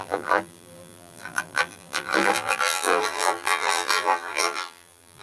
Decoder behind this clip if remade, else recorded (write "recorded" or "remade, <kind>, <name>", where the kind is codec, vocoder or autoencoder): remade, vocoder, BigVGAN v2